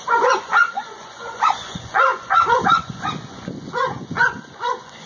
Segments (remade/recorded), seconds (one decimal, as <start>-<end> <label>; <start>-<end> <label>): 0.0-5.1 remade